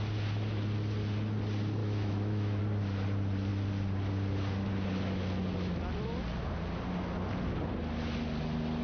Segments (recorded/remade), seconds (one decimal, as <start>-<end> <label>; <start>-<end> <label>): 0.0-1.8 recorded; 1.8-2.6 remade; 2.6-8.8 recorded